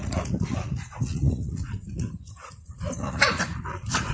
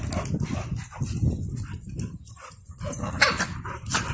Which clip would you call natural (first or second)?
second